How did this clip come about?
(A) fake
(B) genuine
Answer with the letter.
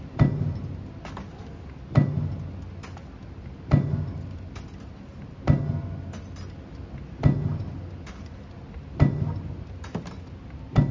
B